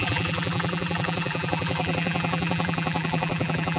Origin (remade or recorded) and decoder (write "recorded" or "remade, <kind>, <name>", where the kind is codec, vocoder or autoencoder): remade, vocoder, BigVGAN v2